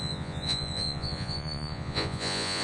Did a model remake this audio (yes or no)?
yes